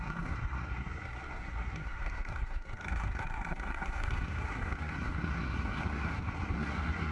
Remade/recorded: remade